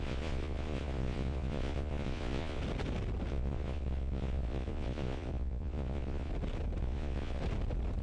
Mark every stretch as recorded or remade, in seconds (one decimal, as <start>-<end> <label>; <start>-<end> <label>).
0.0-2.6 remade; 2.6-3.3 recorded; 3.3-6.3 remade; 6.3-6.8 recorded; 6.8-7.4 remade; 7.4-8.0 recorded